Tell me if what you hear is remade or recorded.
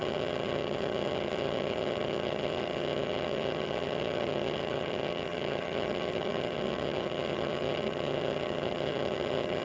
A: remade